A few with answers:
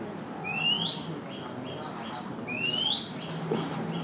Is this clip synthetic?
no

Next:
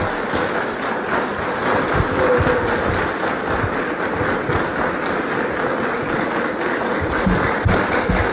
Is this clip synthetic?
no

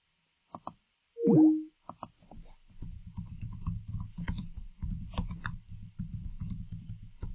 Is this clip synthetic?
no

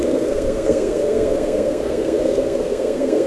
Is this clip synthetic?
yes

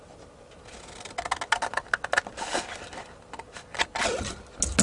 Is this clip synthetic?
no